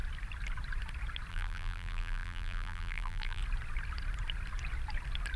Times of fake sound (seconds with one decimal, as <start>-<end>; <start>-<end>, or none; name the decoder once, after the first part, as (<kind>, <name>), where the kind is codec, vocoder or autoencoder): 1.3-3.4 (vocoder, BigVGAN v2)